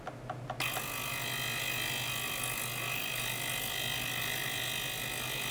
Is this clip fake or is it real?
real